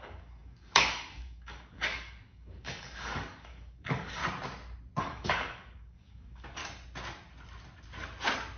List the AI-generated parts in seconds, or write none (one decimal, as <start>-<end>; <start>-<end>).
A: 0.0-4.2; 5.0-6.6